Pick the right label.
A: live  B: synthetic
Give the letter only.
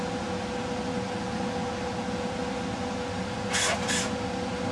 A